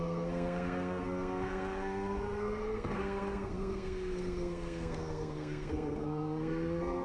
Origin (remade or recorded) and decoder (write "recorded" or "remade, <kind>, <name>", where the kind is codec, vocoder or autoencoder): remade, codec, SNAC